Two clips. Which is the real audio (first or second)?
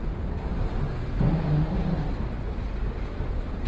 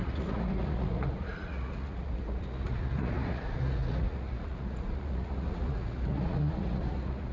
first